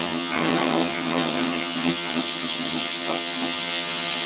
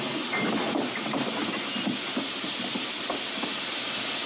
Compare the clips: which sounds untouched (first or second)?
second